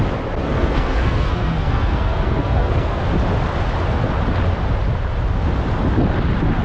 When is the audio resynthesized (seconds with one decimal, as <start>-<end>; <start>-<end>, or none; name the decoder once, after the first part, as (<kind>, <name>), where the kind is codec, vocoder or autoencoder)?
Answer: 0.4-3.0 (codec, SNAC)